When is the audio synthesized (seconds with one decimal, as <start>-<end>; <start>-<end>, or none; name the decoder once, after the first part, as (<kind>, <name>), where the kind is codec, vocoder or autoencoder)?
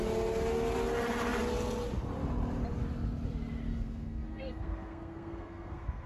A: 3.7-6.1 (codec, SNAC)